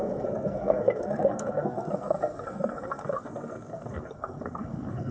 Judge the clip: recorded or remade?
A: remade